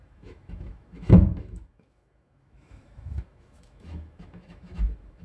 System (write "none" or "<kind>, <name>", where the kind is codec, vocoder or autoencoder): autoencoder, DAC-VAE